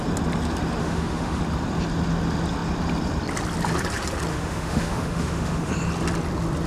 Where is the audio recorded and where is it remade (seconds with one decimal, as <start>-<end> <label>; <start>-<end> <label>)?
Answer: 0.0-0.8 recorded; 0.8-1.4 remade; 1.4-4.3 recorded; 4.3-5.7 remade; 5.7-6.7 recorded